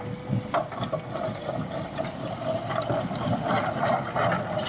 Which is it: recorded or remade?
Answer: recorded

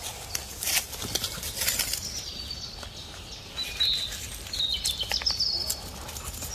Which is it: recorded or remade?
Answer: recorded